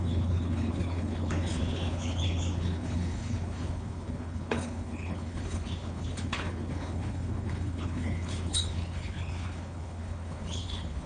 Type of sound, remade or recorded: remade